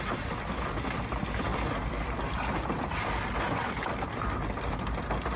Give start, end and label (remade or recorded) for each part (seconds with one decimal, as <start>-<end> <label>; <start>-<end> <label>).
0.0-5.4 recorded